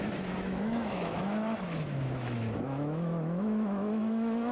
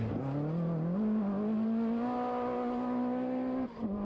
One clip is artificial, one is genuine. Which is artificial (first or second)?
first